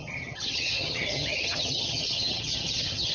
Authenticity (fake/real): fake